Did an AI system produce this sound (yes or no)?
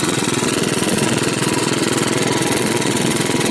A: yes